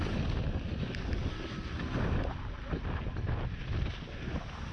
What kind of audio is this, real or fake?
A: real